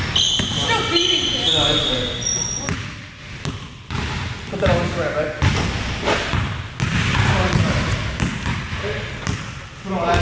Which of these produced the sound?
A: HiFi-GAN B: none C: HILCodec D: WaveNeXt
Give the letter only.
B